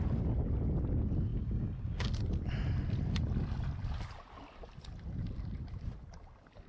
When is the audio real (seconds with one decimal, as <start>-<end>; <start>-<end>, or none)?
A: 0.0-1.3; 2.1-6.7